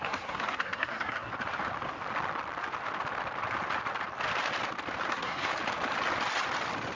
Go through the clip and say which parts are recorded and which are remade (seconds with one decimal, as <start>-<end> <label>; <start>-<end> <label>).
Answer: 0.0-1.3 remade; 1.3-5.1 recorded; 5.1-5.5 remade; 5.5-7.0 recorded